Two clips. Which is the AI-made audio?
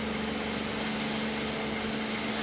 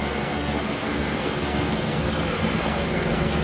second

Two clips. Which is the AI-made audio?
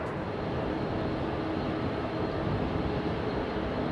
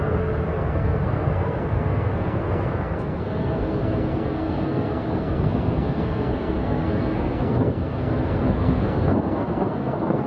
second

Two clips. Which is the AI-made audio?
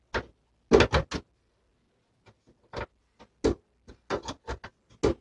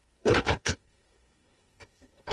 second